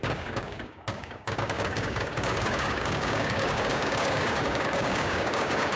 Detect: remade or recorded remade